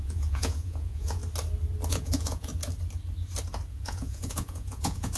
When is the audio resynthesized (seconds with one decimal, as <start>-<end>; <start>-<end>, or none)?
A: 0.0-1.2; 1.9-2.5; 3.7-5.2